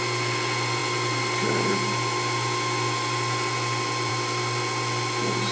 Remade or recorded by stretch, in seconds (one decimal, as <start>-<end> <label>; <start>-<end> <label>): 0.0-5.5 recorded